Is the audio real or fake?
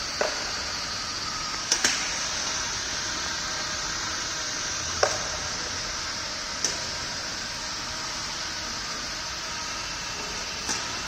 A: real